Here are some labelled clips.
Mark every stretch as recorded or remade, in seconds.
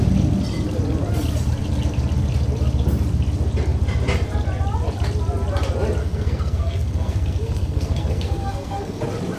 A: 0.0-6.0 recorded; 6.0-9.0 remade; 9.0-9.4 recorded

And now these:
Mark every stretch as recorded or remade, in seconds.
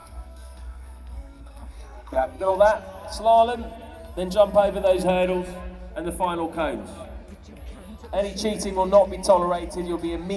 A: 0.0-2.5 remade; 2.5-10.4 recorded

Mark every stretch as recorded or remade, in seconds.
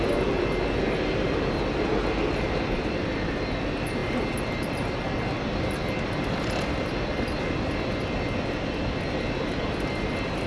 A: 0.0-10.5 recorded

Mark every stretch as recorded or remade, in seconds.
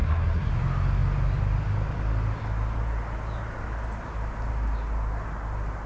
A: 0.0-0.5 remade; 0.5-5.9 recorded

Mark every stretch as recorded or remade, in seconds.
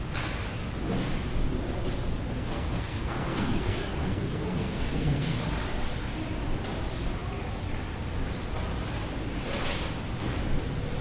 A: 0.0-2.3 recorded; 2.3-5.4 remade; 5.4-11.0 recorded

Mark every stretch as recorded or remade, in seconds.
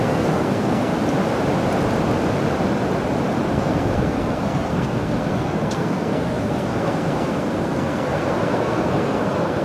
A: 0.0-0.9 remade; 0.9-3.5 recorded; 3.5-9.6 remade